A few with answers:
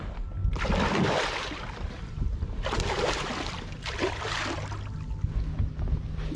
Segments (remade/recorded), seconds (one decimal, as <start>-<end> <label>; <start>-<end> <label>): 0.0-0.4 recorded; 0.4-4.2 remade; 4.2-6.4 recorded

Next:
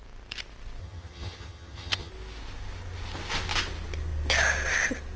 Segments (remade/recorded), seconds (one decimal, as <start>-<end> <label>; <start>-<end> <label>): 0.0-0.8 recorded; 0.8-2.1 remade; 2.1-5.2 recorded

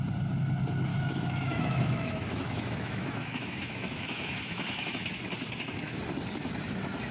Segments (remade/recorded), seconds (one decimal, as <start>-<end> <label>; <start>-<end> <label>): 0.0-0.9 recorded; 0.9-5.2 remade; 5.2-7.1 recorded

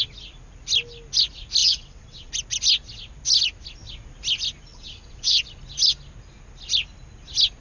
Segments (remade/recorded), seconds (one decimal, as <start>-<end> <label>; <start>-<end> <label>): 0.0-1.6 recorded; 1.6-2.3 remade; 2.3-4.7 recorded; 4.7-5.4 remade; 5.4-7.6 recorded